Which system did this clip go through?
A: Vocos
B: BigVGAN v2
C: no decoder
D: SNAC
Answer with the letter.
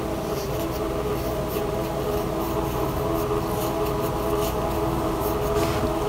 C